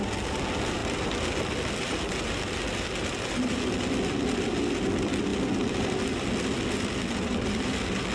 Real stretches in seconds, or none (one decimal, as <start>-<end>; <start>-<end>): 0.0-8.1